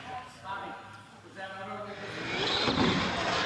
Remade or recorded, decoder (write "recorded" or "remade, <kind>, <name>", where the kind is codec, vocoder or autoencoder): recorded